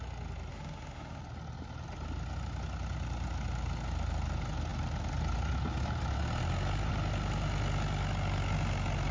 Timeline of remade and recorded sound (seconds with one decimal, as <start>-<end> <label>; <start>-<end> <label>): 0.0-0.5 recorded; 0.5-1.2 remade; 1.2-9.1 recorded